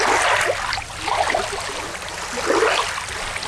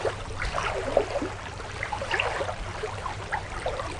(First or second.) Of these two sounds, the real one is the first